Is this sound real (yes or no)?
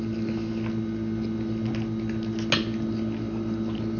yes